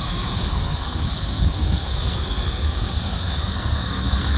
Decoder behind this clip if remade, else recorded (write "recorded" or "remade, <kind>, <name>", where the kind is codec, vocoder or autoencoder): remade, codec, SNAC